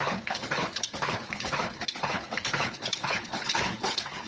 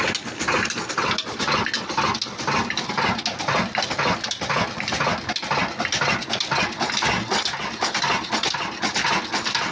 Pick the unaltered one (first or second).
second